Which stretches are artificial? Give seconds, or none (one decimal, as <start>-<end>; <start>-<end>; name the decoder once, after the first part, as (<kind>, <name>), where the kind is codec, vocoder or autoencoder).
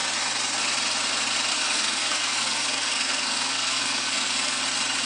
1.5-4.6 (codec, SNAC)